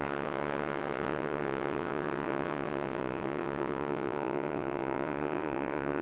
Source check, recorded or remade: remade